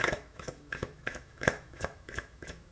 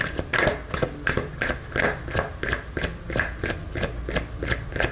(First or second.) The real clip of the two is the second